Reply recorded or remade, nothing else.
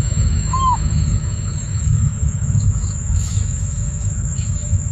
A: remade